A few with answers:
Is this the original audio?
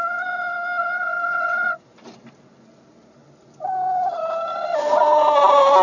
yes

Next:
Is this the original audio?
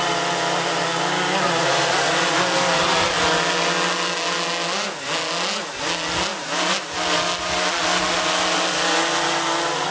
yes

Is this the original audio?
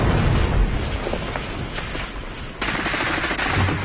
yes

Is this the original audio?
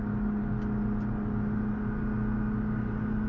yes